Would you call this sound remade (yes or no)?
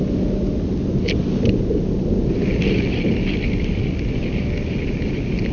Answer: no